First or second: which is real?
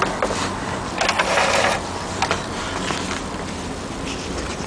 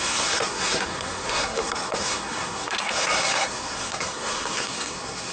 first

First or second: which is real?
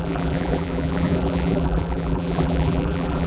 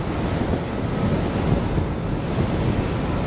second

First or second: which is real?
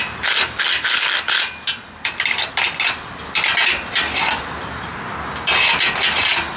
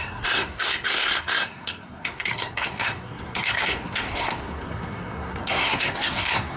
first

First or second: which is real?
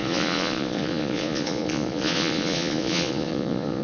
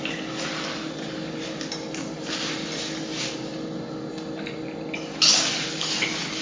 second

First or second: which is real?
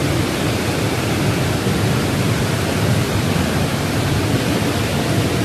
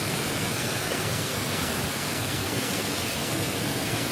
first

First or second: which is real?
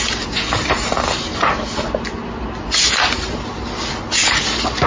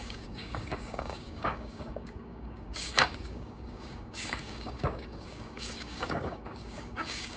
first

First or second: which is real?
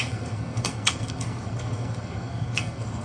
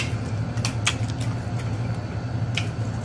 second